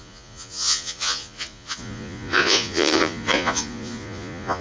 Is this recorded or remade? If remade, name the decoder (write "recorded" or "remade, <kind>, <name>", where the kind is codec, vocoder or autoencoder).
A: remade, vocoder, Vocos